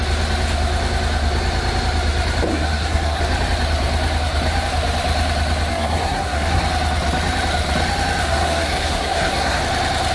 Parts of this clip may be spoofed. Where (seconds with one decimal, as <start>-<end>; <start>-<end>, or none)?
2.5-3.2; 5.7-6.6; 8.2-9.6